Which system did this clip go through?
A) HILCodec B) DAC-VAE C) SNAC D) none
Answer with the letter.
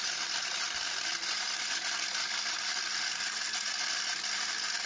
D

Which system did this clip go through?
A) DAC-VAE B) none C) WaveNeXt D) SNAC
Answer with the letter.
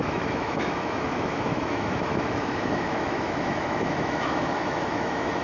A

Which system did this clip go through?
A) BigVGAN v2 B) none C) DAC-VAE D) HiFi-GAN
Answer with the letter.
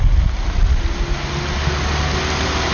B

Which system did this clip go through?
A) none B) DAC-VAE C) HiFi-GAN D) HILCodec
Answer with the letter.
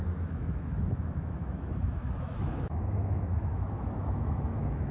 B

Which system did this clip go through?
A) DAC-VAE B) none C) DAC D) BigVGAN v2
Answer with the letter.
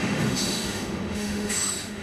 A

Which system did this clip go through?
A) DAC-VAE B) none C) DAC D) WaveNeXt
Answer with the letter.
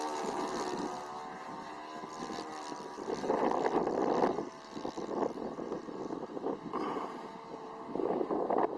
B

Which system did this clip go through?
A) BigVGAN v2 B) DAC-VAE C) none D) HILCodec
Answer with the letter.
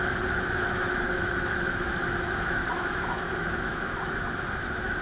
B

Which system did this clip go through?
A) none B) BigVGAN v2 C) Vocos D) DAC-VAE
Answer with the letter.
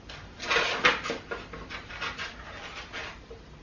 A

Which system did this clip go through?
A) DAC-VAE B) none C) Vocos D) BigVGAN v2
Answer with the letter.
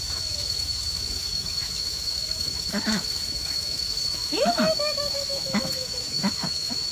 A